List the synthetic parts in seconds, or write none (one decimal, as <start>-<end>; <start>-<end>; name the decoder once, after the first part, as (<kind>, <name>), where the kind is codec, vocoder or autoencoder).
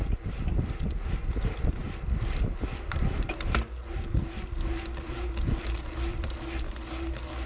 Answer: none